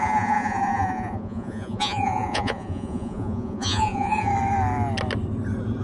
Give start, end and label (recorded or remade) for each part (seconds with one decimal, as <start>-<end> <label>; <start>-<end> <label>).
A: 0.0-4.3 remade; 4.3-5.8 recorded